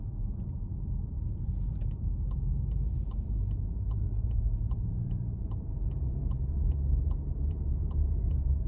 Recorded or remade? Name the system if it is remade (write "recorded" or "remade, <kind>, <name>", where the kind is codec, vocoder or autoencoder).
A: remade, vocoder, BigVGAN v2